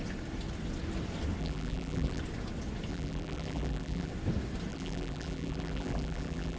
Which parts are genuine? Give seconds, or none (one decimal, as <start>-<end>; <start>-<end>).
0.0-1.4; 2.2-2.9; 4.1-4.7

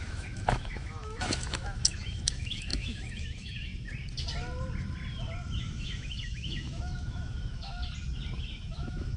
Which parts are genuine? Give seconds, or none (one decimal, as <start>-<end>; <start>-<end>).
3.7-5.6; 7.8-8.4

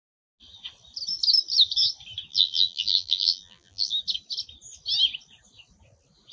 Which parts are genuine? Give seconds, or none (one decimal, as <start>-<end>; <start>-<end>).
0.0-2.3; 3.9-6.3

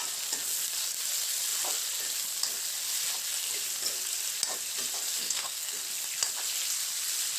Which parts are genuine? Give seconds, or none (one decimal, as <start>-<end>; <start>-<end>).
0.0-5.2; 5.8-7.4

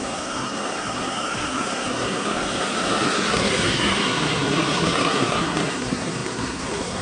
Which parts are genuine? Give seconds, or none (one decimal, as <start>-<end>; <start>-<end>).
none

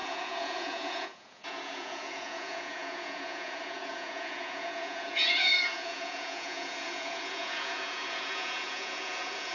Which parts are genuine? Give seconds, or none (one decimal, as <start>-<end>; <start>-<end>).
none

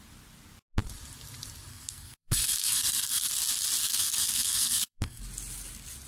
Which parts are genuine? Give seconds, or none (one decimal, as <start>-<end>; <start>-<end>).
0.0-1.7; 3.3-3.8; 5.2-6.1